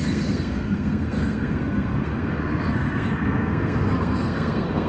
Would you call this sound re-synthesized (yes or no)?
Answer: yes